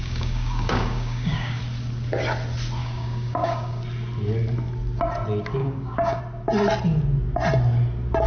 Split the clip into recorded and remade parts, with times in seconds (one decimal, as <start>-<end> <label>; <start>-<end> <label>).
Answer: 0.0-1.6 remade; 1.6-2.8 recorded; 2.8-3.8 remade; 3.8-5.6 recorded; 5.6-6.2 remade; 6.2-8.3 recorded